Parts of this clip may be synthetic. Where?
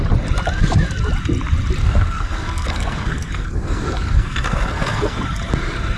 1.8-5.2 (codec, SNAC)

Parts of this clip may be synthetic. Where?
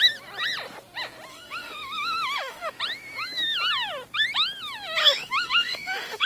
1.3-2.7 (autoencoder, DAC-VAE); 5.0-6.3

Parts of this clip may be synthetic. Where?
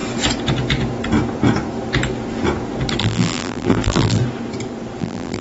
3.0-4.2 (vocoder, BigVGAN v2); 5.0-5.4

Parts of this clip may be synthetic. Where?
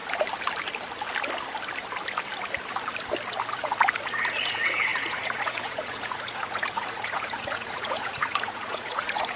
3.5-9.4 (vocoder, Vocos)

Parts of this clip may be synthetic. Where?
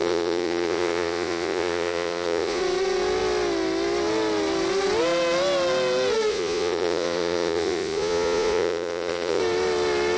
0.0-2.6 (vocoder, Vocos); 6.3-9.4